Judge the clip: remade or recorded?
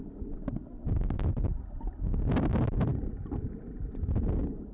recorded